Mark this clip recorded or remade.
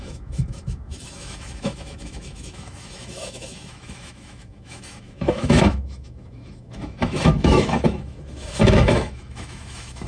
remade